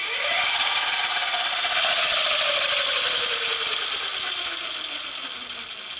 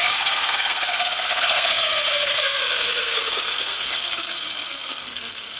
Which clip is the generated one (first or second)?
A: second